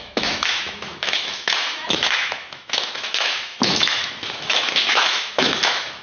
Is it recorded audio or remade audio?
remade